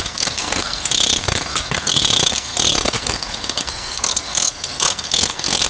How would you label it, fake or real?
fake